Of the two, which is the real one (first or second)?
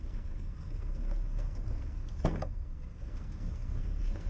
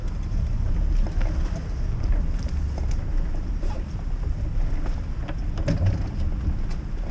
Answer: second